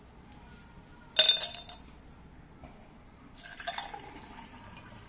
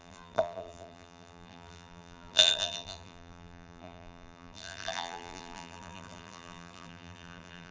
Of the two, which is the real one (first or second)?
first